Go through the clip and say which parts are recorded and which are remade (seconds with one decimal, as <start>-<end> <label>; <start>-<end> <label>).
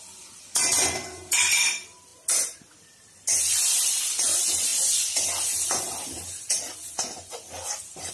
0.0-8.1 recorded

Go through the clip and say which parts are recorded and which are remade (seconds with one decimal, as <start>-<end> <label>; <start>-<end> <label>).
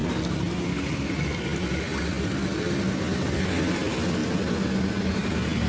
0.0-5.7 recorded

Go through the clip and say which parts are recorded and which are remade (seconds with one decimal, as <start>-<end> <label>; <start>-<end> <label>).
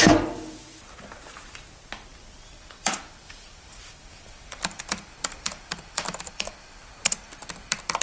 0.0-2.1 recorded; 2.1-6.8 remade; 6.8-8.0 recorded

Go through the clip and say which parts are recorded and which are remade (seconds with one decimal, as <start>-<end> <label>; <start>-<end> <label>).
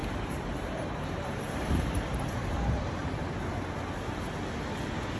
0.0-3.1 remade; 3.1-5.2 recorded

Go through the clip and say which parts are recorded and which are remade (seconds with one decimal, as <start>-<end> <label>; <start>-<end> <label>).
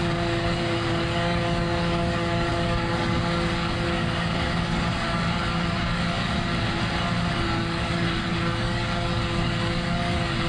0.0-6.5 remade; 6.5-7.3 recorded; 7.3-10.5 remade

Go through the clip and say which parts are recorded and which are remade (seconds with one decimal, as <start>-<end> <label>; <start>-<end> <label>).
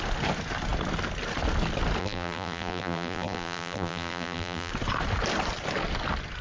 0.0-2.0 recorded; 2.0-4.7 remade; 4.7-6.4 recorded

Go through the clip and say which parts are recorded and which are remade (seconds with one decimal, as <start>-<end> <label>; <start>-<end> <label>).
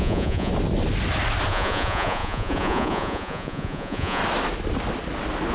0.0-0.5 remade; 0.5-1.5 recorded; 1.5-4.2 remade; 4.2-5.5 recorded